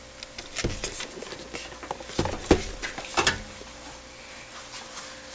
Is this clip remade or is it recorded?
recorded